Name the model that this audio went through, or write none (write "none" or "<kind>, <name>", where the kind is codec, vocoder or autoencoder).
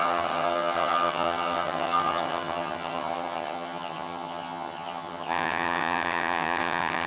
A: vocoder, HiFi-GAN